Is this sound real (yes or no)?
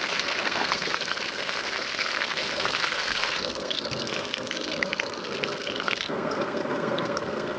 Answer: no